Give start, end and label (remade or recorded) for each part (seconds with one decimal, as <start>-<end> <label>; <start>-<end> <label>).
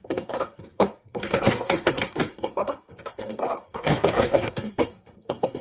0.0-5.6 remade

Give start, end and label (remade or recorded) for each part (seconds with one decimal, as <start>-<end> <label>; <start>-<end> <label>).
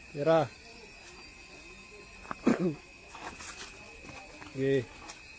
0.0-2.5 recorded; 2.5-3.3 remade; 3.3-5.4 recorded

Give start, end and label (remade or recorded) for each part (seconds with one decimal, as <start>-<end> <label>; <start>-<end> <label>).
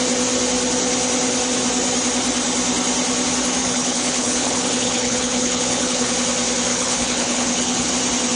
0.0-3.6 recorded; 3.6-6.1 remade; 6.1-6.7 recorded; 6.7-7.9 remade; 7.9-8.4 recorded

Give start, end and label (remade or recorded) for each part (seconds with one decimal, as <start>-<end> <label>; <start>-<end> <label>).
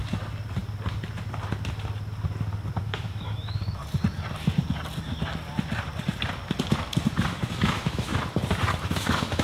0.0-2.8 recorded; 2.8-3.8 remade; 3.8-7.6 recorded; 7.6-8.1 remade; 8.1-8.7 recorded; 8.7-9.4 remade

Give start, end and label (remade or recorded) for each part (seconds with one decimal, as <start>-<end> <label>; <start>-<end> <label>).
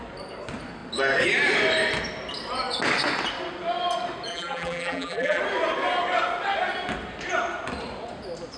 0.0-4.3 recorded; 4.3-5.4 remade; 5.4-8.6 recorded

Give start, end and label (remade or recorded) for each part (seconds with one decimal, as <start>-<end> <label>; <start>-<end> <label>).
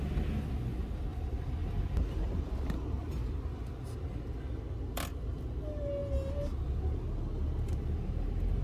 0.0-8.6 recorded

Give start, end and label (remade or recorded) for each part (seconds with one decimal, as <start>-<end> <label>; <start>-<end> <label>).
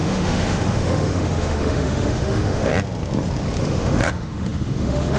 0.0-2.7 remade; 2.7-3.6 recorded; 3.6-5.2 remade